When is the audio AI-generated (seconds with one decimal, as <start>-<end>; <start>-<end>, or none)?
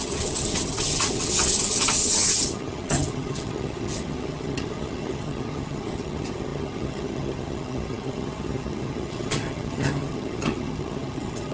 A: 0.0-11.5